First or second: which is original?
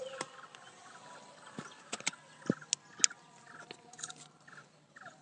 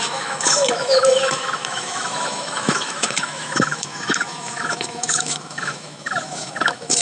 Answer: first